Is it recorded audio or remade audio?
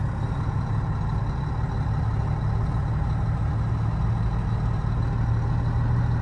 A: recorded